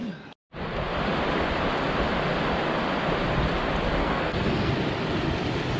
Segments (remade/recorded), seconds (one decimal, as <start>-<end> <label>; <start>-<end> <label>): 0.0-4.0 recorded; 4.0-4.7 remade; 4.7-5.8 recorded